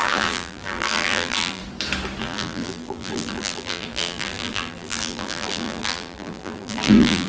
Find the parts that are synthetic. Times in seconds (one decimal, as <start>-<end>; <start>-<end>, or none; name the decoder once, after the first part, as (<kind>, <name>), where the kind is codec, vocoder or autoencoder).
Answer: 0.0-1.6 (vocoder, BigVGAN v2); 2.2-7.3

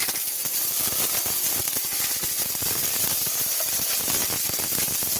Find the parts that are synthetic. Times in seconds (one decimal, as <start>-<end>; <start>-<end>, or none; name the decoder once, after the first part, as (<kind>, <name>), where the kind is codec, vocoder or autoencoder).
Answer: 1.8-4.1 (vocoder, BigVGAN v2)

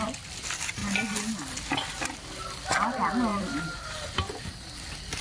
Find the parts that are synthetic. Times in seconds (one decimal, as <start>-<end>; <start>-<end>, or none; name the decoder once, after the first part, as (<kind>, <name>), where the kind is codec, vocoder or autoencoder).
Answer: 3.3-4.4 (vocoder, BigVGAN v2)

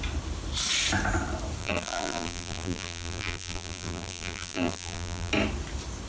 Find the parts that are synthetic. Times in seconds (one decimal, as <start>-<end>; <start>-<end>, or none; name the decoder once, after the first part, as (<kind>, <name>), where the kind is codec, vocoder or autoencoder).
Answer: 1.6-5.3 (vocoder, BigVGAN v2)

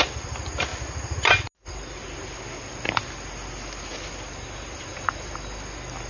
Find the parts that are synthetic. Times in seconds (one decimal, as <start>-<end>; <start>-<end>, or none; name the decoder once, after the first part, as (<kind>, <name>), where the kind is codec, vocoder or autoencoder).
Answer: none

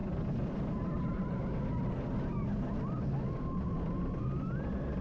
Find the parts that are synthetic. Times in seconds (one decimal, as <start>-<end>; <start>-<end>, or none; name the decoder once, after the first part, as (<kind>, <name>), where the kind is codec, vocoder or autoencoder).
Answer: none